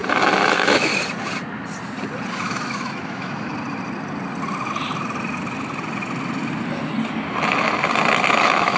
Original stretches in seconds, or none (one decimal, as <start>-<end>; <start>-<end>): 0.0-0.5; 0.9-2.3; 3.5-8.3